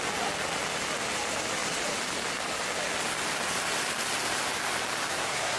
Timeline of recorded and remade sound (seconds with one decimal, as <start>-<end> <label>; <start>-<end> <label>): 0.0-5.1 recorded; 5.1-5.6 remade